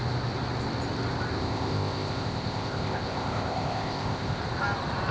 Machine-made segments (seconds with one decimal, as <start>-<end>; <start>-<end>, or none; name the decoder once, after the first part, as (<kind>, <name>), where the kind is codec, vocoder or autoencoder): 1.3-4.4 (codec, ZipCodec)